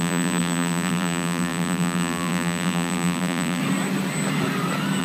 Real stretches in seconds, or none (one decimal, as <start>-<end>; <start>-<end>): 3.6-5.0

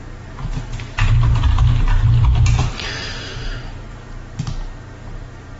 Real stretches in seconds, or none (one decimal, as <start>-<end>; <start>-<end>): 0.0-2.3; 3.6-5.6

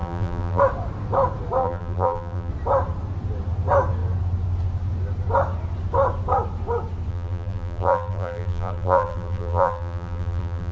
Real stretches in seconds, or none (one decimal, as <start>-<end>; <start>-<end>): 0.6-1.6; 2.5-7.1

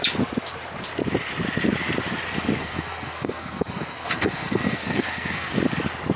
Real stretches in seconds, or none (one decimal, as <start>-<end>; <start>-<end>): 0.0-2.6; 5.5-6.2